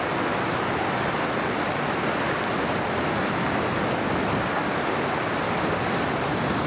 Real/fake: real